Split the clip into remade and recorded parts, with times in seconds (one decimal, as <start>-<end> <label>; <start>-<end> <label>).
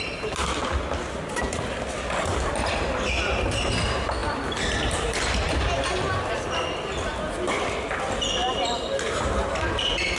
0.0-10.2 recorded